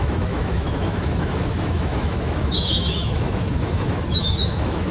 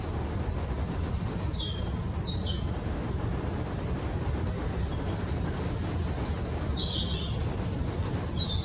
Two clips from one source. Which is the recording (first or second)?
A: second